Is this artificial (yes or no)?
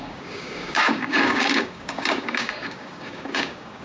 yes